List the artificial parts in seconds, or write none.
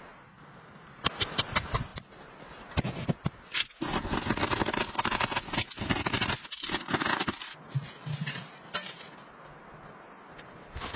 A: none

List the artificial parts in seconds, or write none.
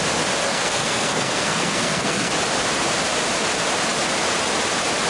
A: 0.5-2.3 (codec, SNAC)